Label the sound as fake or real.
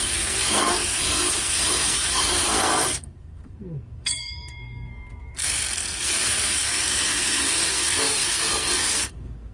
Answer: fake